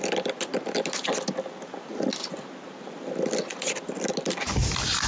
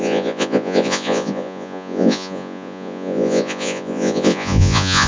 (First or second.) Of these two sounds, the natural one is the first